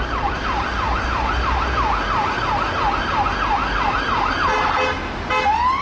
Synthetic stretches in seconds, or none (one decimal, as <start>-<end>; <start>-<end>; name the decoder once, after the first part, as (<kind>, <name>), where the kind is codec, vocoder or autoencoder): none